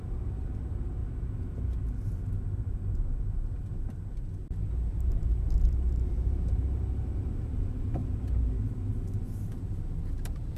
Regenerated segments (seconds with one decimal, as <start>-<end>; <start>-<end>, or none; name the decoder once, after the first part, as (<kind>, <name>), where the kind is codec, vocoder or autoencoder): 0.0-1.0 (vocoder, BigVGAN v2); 5.0-8.0; 10.0-10.6